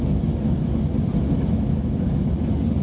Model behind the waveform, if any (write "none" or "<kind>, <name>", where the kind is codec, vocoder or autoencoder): none